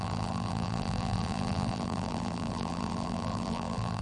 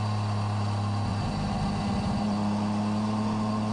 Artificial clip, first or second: first